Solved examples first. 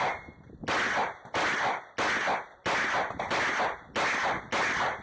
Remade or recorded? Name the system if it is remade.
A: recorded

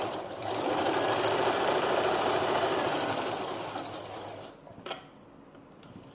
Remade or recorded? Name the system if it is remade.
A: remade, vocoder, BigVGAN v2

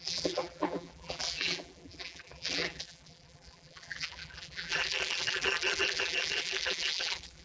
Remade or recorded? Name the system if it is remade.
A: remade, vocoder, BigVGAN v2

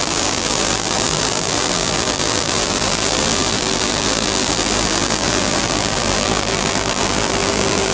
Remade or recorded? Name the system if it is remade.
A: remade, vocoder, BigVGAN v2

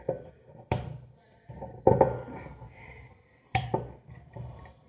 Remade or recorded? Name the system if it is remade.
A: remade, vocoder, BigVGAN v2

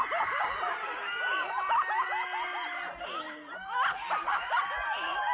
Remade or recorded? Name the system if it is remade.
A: recorded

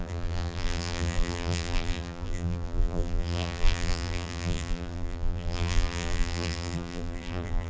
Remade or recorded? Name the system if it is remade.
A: remade, vocoder, BigVGAN v2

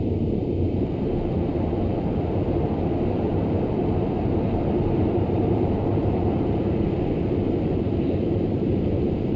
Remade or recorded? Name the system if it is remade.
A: remade, vocoder, BigVGAN v2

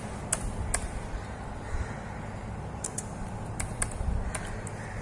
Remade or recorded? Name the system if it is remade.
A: recorded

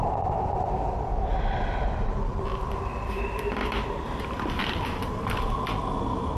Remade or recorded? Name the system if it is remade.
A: remade, vocoder, BigVGAN v2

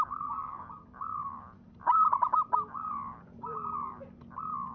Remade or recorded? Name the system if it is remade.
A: remade, vocoder, BigVGAN v2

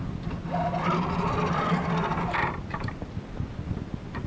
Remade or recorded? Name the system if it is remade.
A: recorded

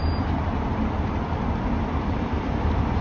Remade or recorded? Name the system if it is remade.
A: remade, vocoder, BigVGAN v2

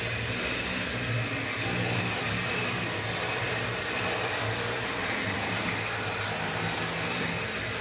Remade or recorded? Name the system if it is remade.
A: recorded